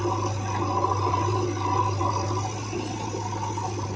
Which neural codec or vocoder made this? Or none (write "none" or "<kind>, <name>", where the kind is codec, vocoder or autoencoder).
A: none